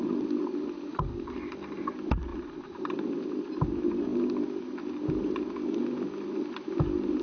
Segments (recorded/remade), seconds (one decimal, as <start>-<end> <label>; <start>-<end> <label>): 0.0-0.9 recorded; 0.9-1.9 remade; 1.9-2.3 recorded; 2.3-2.9 remade; 2.9-7.2 recorded